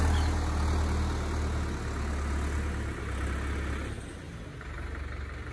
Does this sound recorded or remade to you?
recorded